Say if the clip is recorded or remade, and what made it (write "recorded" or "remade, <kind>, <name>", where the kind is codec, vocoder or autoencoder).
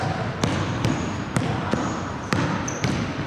remade, vocoder, BigVGAN v2